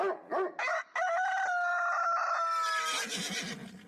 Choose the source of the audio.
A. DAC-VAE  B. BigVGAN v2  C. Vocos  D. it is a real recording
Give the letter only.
D